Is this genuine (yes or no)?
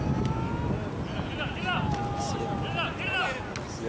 yes